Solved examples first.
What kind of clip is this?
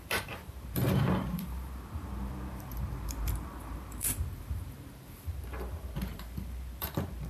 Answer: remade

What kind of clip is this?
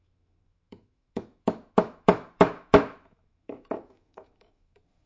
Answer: remade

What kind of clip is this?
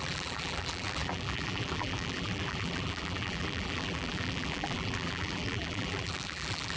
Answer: remade